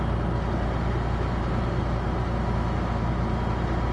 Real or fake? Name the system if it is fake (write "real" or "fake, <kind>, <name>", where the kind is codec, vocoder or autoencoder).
real